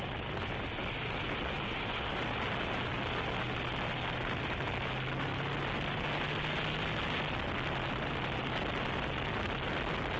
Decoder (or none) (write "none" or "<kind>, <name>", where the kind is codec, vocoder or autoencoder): none